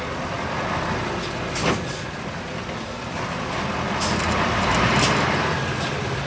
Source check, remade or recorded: recorded